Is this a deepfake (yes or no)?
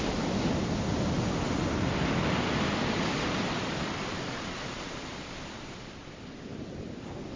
no